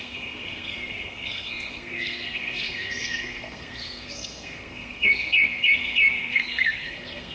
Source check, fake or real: fake